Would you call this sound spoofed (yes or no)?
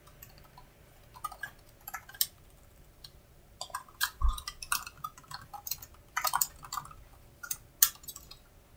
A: no